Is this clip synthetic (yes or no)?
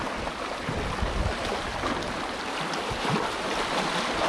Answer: no